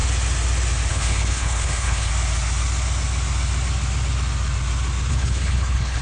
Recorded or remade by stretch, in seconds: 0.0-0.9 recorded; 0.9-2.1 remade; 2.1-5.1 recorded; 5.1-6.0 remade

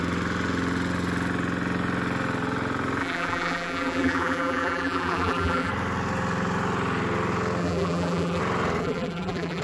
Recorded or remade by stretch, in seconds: 0.0-3.0 recorded; 3.0-5.7 remade; 5.7-7.6 recorded; 7.6-8.4 remade; 8.4-8.8 recorded; 8.8-9.6 remade

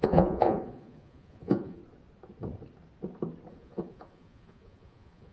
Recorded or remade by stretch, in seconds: 0.0-1.8 remade; 1.8-3.5 recorded; 3.5-5.3 remade

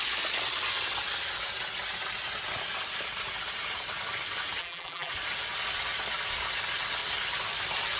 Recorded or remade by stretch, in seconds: 0.0-4.6 recorded; 4.6-5.1 remade; 5.1-8.0 recorded

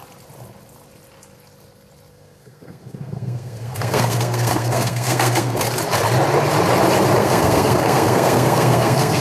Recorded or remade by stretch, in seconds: 0.0-2.1 recorded; 2.1-5.6 remade; 5.6-7.2 recorded; 7.2-9.2 remade